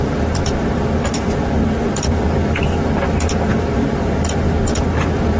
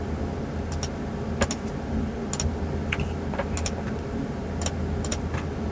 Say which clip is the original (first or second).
second